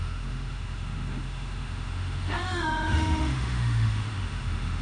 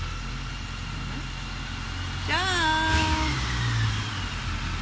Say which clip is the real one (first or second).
second